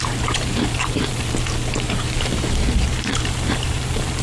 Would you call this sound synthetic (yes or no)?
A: yes